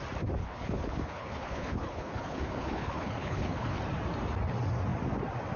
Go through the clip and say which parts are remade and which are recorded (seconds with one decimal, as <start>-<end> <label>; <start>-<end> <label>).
0.0-0.4 recorded; 0.4-3.8 remade; 3.8-5.6 recorded